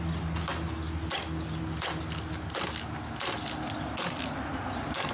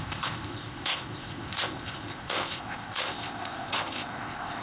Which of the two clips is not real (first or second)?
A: second